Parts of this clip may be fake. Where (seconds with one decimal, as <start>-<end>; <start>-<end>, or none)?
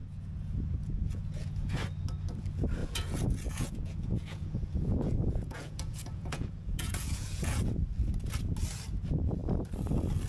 0.0-1.8; 2.8-7.7